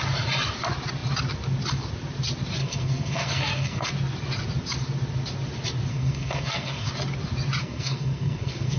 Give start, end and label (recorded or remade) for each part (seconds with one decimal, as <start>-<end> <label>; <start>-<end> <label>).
0.0-2.6 recorded; 2.6-3.9 remade; 3.9-5.9 recorded; 5.9-6.9 remade; 6.9-7.6 recorded; 7.6-8.8 remade